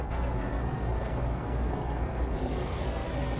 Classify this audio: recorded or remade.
remade